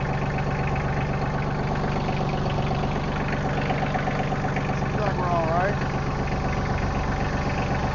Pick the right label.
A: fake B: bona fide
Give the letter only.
B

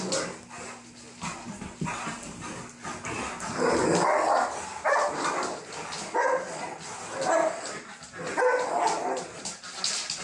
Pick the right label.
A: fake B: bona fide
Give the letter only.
B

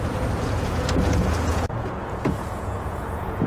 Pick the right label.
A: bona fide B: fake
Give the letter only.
B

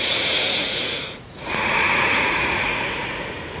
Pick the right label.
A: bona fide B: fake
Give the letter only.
B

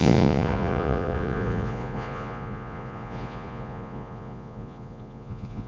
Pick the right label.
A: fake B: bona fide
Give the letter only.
A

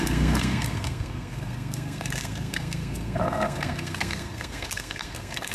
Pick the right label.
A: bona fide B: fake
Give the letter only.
B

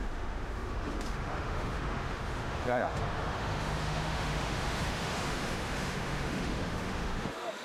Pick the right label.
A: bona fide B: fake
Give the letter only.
B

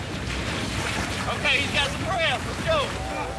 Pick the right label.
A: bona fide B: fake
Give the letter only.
A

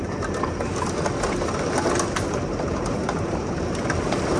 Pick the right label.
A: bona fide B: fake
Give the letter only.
A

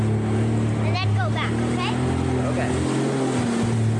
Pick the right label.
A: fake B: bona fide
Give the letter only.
B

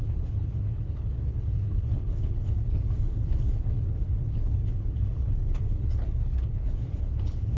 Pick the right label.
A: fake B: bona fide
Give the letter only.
A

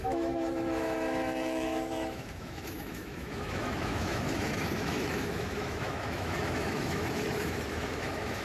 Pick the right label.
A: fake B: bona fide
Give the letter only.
A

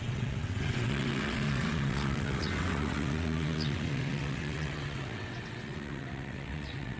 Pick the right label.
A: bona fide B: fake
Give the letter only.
B